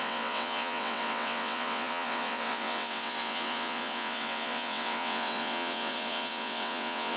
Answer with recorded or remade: remade